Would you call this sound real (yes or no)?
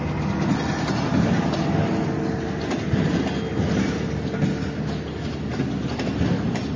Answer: yes